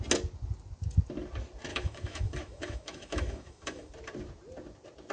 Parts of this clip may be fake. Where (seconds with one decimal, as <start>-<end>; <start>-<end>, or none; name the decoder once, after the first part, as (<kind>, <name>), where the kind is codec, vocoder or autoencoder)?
1.7-3.9 (autoencoder, DAC-VAE)